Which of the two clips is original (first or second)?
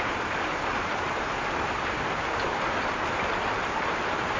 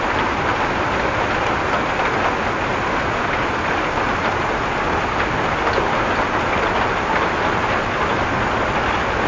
second